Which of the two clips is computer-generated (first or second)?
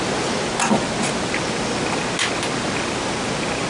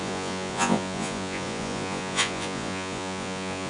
second